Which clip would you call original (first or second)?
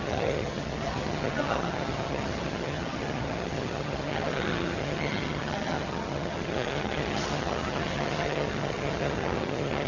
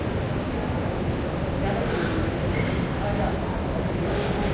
second